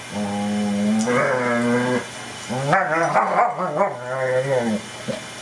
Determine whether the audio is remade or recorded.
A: recorded